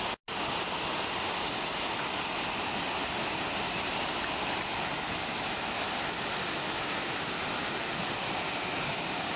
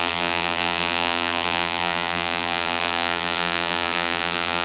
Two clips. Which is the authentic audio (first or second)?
first